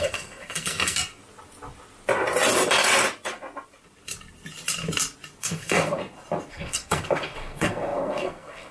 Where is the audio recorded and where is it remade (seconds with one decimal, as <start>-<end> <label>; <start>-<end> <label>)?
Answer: 0.0-1.2 remade; 1.2-5.4 recorded; 5.4-6.0 remade; 6.0-6.5 recorded; 6.5-8.7 remade